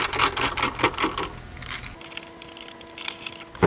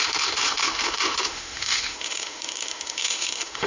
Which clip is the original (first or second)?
first